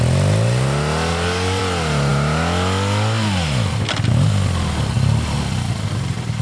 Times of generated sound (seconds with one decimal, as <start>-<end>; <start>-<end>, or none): 1.1-1.6